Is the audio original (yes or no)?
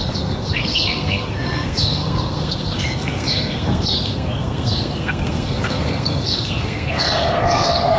no